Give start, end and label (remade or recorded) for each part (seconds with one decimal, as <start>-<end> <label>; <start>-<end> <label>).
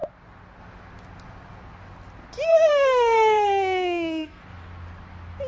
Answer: 0.0-2.5 recorded; 2.5-4.4 remade; 4.4-5.5 recorded